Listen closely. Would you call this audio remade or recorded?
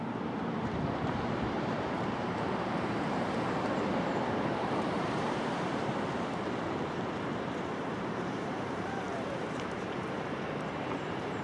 remade